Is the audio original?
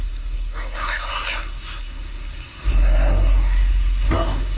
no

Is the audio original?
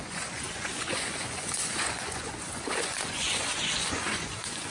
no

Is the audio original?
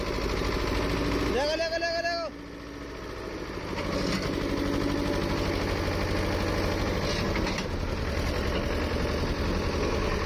yes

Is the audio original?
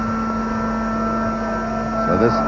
yes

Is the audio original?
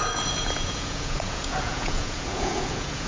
no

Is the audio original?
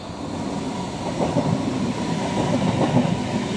yes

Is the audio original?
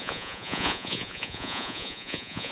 no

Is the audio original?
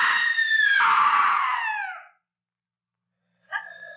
yes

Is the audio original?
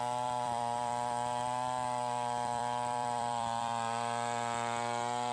no